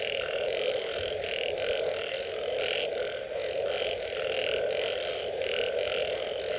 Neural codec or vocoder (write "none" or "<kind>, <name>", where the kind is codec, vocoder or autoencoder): none